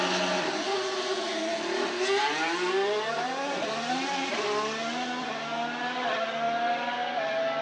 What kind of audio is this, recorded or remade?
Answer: recorded